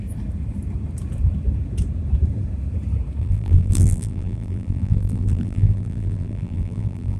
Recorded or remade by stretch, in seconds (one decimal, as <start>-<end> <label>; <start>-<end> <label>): 0.0-3.2 recorded; 3.2-7.2 remade